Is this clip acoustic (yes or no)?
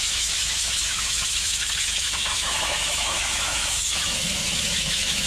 no